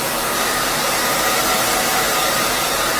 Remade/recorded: remade